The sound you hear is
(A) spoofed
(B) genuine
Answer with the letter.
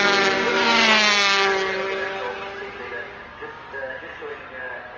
B